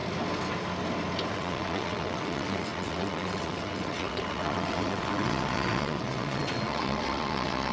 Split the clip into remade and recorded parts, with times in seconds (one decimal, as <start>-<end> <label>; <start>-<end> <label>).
0.0-1.3 recorded; 1.3-7.7 remade